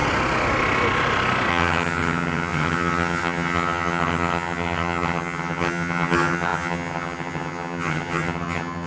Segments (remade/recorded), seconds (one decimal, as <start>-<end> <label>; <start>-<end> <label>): 0.0-1.5 recorded; 1.5-8.9 remade